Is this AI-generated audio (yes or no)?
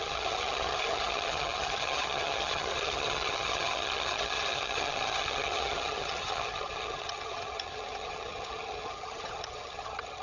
yes